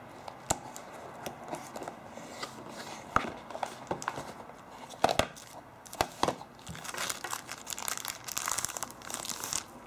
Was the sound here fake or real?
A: real